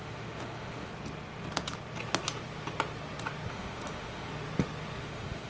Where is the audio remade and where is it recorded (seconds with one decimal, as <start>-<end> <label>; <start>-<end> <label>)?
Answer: 0.0-0.9 remade; 0.9-3.5 recorded; 3.5-4.3 remade; 4.3-5.0 recorded; 5.0-5.5 remade

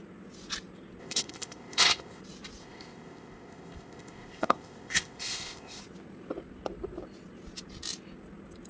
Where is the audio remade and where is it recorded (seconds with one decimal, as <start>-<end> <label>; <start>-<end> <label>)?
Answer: 0.0-1.0 recorded; 1.0-2.2 remade; 2.2-2.6 recorded; 2.6-5.8 remade; 5.8-8.7 recorded

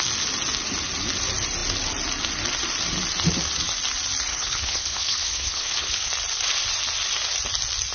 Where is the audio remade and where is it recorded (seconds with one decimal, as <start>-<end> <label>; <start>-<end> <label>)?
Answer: 0.0-4.3 recorded; 4.3-6.1 remade; 6.1-7.9 recorded

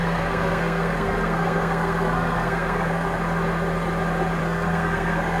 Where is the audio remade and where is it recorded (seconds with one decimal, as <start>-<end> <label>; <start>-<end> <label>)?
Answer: 0.0-3.2 remade; 3.2-4.4 recorded; 4.4-5.4 remade

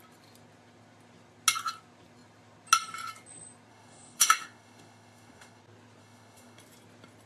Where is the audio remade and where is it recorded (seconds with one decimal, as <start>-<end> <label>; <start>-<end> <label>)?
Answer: 0.0-3.7 recorded; 3.7-5.6 remade; 5.6-6.0 recorded; 6.0-6.6 remade; 6.6-7.3 recorded